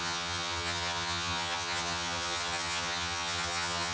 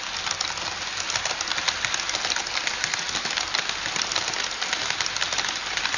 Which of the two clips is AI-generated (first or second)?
first